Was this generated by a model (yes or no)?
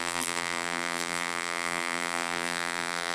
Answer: yes